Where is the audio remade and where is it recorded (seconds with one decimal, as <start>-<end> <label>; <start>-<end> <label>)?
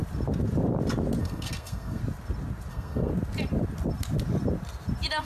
0.0-1.2 recorded; 1.2-2.0 remade; 2.0-2.7 recorded; 2.7-3.1 remade; 3.1-5.2 recorded